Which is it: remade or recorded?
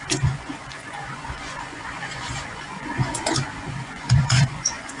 remade